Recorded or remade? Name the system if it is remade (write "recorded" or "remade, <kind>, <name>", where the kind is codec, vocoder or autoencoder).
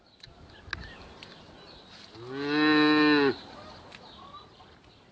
recorded